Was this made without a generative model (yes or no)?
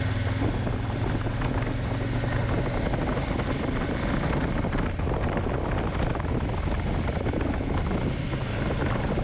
yes